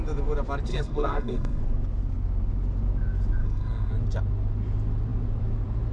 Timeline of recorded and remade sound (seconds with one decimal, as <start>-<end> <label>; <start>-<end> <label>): 0.0-0.7 recorded; 0.7-1.6 remade; 1.6-3.4 recorded; 3.4-3.9 remade; 3.9-5.9 recorded